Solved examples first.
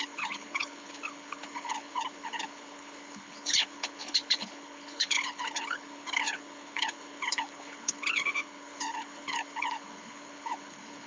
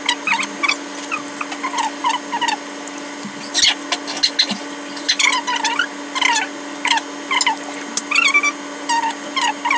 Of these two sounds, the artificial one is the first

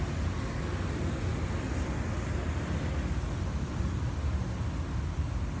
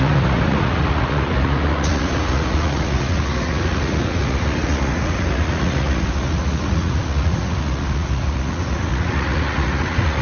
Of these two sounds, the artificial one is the second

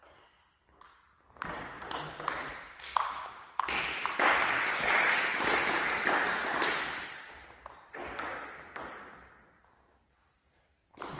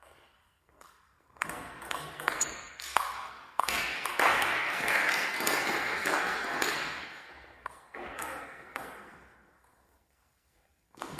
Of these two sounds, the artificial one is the second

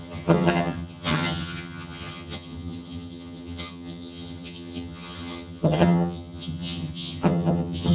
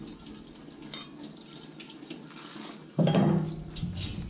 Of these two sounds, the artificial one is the first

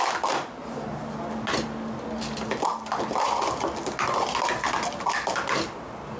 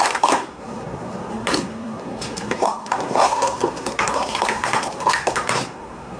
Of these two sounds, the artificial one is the second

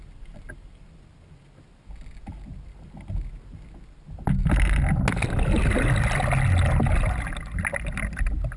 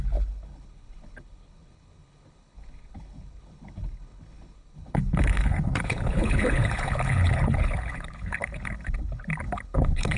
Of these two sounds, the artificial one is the second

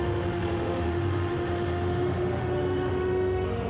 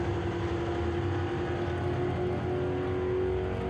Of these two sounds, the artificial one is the first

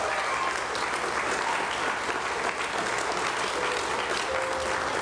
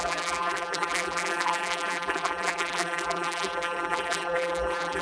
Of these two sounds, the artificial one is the second